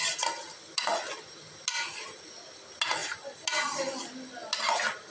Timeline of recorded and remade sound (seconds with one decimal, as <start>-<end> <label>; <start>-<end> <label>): 0.0-5.1 recorded